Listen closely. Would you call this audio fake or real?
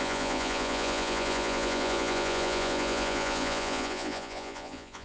fake